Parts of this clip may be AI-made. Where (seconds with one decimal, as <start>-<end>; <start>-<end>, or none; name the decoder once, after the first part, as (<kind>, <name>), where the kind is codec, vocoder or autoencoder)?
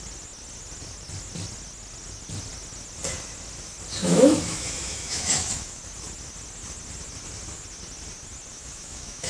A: 4.0-5.8 (autoencoder, DAC-VAE); 8.5-9.3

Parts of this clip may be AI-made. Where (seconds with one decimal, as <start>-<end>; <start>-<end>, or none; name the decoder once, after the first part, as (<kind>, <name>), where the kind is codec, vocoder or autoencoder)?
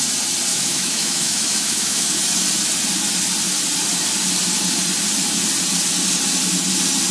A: 0.5-2.2 (autoencoder, DAC-VAE)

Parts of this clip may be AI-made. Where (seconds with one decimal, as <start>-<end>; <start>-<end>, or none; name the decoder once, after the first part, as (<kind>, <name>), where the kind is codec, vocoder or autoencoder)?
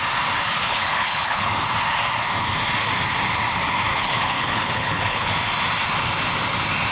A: 0.7-1.5 (codec, HILCodec); 3.9-5.3